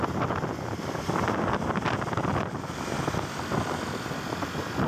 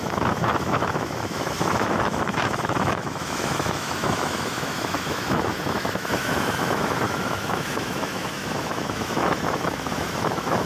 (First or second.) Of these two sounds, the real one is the first